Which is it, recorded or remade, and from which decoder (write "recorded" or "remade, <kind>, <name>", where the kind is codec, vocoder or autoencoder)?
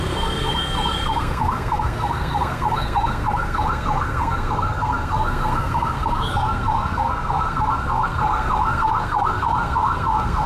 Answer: remade, codec, SNAC